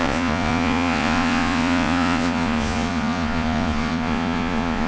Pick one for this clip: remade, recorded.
remade